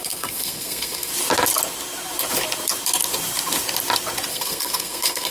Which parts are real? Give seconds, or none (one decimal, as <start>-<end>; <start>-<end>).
1.1-4.3